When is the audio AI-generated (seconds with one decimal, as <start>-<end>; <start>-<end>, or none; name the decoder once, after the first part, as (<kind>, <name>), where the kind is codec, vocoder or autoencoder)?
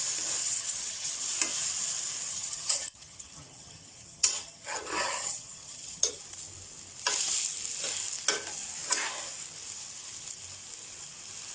0.4-1.2 (vocoder, HiFi-GAN); 2.3-6.2